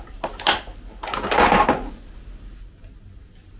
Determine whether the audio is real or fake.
real